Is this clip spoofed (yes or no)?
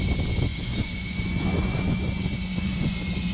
yes